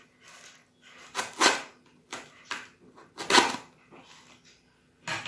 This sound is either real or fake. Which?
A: real